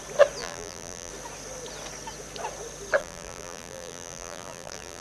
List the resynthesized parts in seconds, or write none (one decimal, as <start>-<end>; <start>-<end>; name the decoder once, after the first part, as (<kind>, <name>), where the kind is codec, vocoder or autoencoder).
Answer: 0.4-1.1 (vocoder, BigVGAN v2); 3.0-5.0